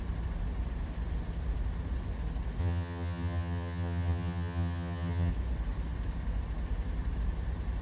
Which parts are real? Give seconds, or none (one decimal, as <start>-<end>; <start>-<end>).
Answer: 0.0-2.6; 5.3-7.8